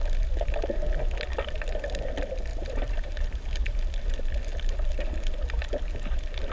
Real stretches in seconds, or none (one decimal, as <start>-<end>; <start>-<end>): 0.0-2.5; 3.8-6.5